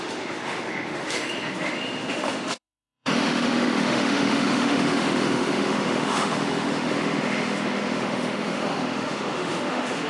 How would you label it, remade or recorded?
remade